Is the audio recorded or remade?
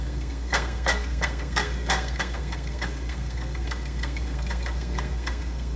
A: remade